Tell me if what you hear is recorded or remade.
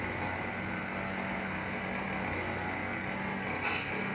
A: recorded